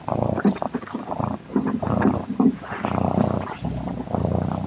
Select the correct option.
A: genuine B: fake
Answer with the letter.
A